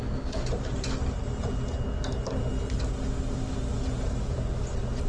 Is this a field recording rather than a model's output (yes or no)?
yes